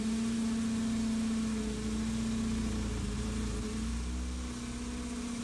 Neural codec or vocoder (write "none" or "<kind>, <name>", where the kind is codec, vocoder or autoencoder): none